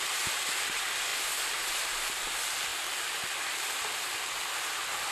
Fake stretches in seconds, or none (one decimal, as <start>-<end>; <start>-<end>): 0.0-5.1